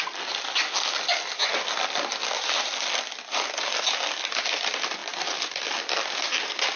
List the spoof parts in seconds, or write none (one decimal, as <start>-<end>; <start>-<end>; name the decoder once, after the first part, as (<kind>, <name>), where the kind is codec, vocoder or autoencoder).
none